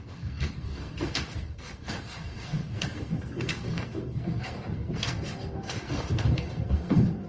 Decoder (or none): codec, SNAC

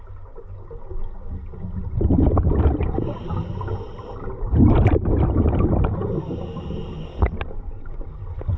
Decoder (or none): none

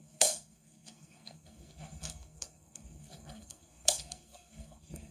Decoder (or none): codec, SNAC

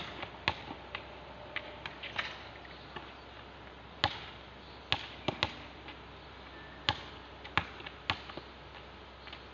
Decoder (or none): none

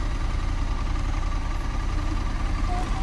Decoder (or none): none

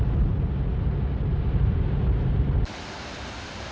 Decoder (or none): none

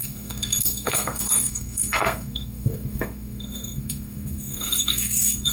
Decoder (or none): codec, SNAC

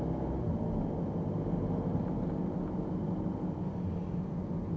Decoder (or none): none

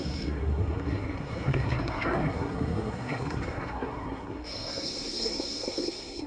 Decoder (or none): codec, SNAC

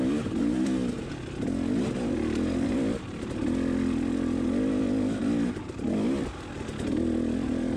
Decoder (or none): none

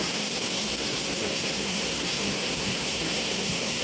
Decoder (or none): codec, SNAC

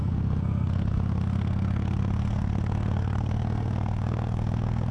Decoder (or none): codec, SNAC